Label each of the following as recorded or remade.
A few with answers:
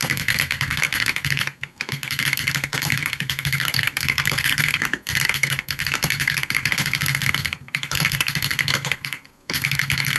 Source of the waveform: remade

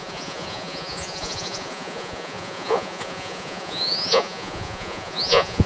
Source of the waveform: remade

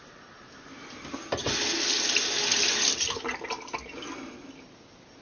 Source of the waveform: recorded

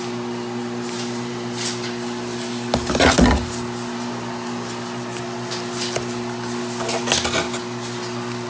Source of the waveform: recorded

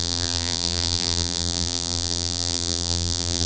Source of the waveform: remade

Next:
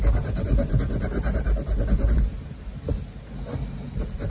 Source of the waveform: recorded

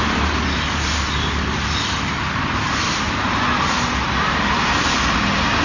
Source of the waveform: recorded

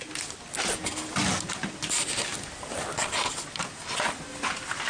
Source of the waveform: recorded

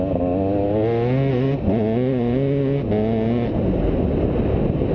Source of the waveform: recorded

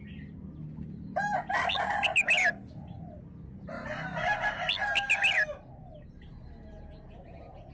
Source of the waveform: recorded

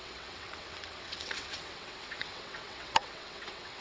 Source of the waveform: remade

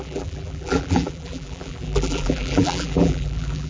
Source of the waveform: remade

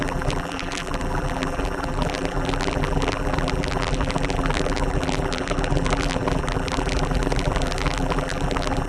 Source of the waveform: remade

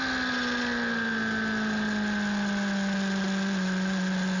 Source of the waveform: recorded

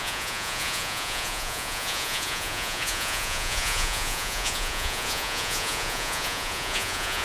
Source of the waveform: remade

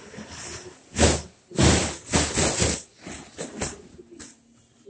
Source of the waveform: recorded